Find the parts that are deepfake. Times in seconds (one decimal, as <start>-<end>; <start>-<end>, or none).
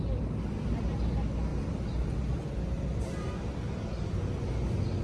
none